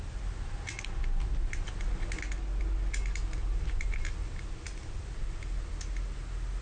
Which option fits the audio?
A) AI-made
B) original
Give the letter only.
B